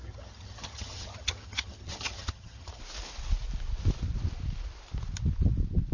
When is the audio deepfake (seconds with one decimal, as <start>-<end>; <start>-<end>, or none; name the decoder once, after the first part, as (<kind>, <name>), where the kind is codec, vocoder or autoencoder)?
0.0-2.8 (vocoder, HiFi-GAN)